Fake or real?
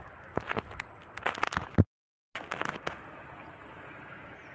real